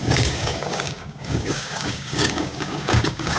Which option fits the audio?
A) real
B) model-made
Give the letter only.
B